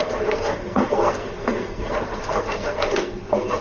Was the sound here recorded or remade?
remade